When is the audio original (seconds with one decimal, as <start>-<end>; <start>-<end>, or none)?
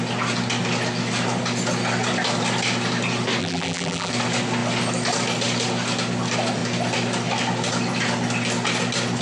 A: 0.0-3.4; 4.1-9.2